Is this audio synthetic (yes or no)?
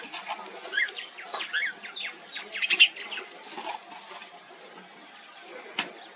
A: no